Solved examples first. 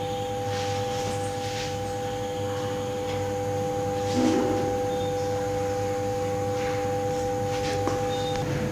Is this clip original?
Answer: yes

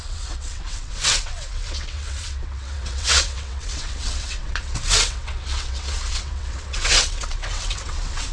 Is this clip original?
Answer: no